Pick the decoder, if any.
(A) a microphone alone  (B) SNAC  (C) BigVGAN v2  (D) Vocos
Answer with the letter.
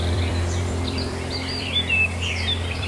C